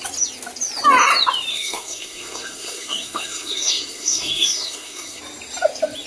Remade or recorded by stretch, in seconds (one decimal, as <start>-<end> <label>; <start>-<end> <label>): 0.0-1.5 recorded; 1.5-5.2 remade; 5.2-6.1 recorded